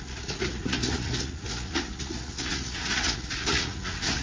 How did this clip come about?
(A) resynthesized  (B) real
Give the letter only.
A